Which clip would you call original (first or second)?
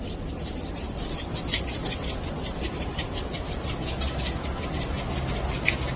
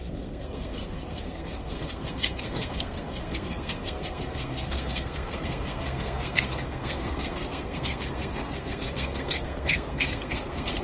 first